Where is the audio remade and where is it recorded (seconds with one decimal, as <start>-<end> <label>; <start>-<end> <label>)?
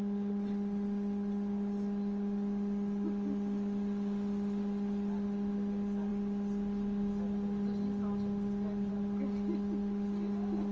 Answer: 0.0-10.7 recorded